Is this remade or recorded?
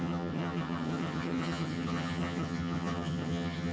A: remade